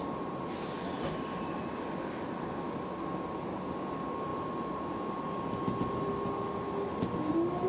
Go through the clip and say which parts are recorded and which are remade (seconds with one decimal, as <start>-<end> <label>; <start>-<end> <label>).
0.0-7.7 recorded